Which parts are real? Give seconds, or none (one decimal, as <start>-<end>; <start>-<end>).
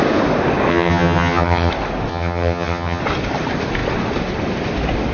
0.0-0.7; 1.7-2.1; 3.0-5.1